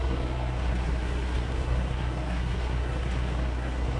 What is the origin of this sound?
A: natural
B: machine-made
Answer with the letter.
B